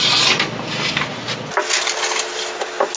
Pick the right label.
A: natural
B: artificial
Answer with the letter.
A